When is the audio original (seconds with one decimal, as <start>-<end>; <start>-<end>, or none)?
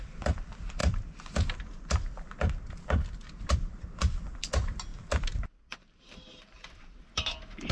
0.0-7.7